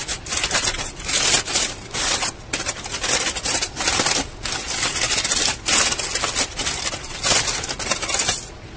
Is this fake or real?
real